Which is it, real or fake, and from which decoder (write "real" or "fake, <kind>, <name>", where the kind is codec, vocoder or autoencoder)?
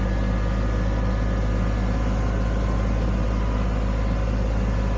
real